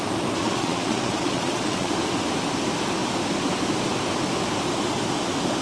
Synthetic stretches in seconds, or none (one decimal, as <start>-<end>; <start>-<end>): 0.4-1.9